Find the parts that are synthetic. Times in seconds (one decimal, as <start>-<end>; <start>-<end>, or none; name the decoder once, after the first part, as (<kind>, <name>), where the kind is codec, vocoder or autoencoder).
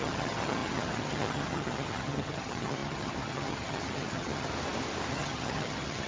0.0-4.5 (vocoder, HiFi-GAN); 5.1-6.1